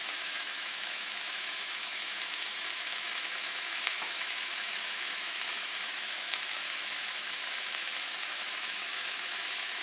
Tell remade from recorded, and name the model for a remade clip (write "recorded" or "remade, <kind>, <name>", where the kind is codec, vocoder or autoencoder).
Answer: remade, autoencoder, DAC-VAE